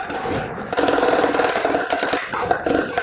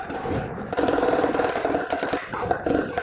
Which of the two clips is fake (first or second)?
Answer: second